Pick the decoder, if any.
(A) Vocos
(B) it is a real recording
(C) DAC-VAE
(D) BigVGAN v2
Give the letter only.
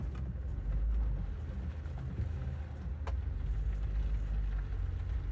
B